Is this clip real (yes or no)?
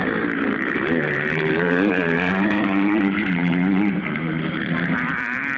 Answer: no